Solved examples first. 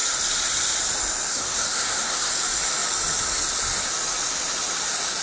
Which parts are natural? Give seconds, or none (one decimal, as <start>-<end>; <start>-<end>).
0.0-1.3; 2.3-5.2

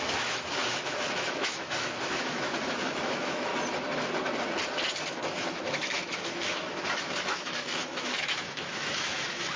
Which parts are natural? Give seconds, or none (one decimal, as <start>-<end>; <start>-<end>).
3.5-5.1

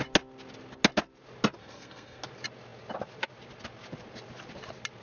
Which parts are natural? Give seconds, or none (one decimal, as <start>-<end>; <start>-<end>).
0.0-1.6; 2.2-5.0

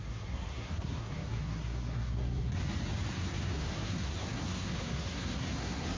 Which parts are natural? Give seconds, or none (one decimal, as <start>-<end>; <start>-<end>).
2.6-3.1

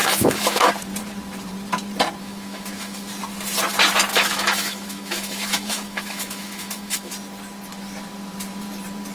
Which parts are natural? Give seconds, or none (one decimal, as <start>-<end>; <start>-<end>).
0.7-2.2; 3.1-4.1; 7.1-9.1

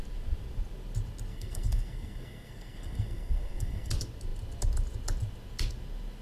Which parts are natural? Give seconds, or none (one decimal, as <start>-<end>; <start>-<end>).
0.0-1.3; 3.9-6.2

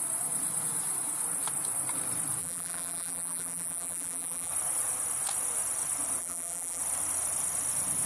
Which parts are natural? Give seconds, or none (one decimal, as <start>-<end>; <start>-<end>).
0.0-2.4; 4.5-6.2; 6.8-8.0

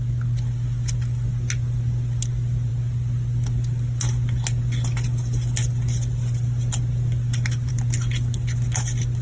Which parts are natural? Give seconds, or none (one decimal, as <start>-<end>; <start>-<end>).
0.0-9.2